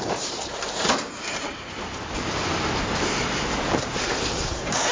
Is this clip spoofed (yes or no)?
yes